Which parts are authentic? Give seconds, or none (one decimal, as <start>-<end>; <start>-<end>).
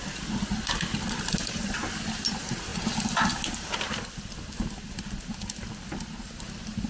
0.0-2.7; 3.7-6.9